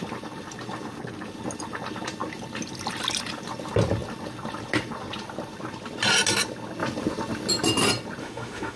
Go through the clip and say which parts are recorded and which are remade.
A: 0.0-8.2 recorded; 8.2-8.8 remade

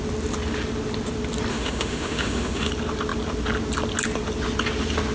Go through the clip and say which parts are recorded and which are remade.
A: 0.0-1.5 recorded; 1.5-2.7 remade; 2.7-5.1 recorded

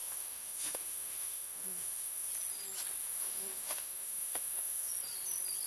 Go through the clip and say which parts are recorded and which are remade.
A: 0.0-2.3 remade; 2.3-3.0 recorded; 3.0-4.9 remade; 4.9-5.7 recorded